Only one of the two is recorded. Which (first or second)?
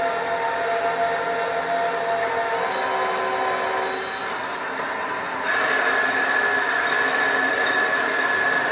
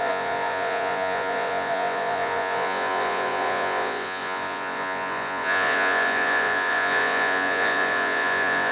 first